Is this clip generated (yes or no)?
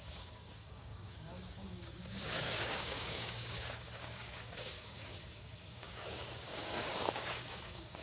yes